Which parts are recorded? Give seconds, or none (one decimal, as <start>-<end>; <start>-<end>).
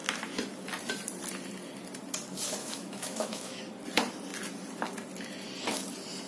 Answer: 0.0-2.6; 3.6-6.3